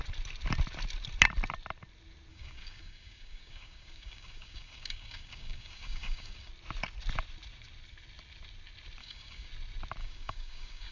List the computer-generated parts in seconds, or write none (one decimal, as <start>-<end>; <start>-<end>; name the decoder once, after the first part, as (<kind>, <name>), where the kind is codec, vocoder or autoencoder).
2.3-6.5 (codec, DAC); 9.0-9.5; 10.0-10.9